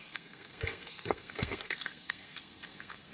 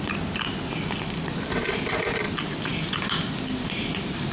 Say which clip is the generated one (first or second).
first